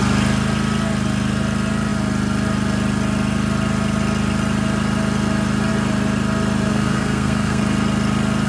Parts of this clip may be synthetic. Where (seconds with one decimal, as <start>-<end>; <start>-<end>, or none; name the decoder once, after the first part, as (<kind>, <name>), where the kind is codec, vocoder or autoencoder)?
6.7-7.6 (codec, SNAC)